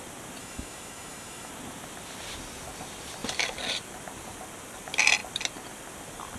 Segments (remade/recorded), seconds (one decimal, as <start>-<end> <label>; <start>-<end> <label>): 0.0-0.4 recorded; 0.4-1.5 remade; 1.5-6.4 recorded